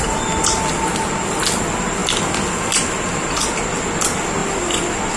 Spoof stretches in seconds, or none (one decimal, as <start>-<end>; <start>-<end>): none